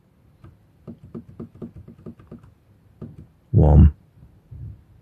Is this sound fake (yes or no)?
no